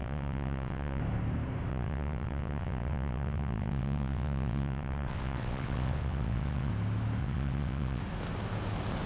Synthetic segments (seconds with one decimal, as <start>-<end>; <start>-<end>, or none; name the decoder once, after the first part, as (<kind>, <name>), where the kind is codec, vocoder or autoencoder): 0.0-1.0 (vocoder, WaveNeXt); 1.7-6.7; 7.2-8.0

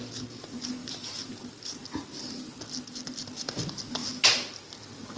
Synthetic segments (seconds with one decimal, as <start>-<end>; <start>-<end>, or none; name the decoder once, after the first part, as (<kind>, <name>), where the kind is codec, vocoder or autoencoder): none